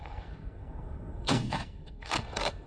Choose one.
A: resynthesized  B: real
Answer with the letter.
A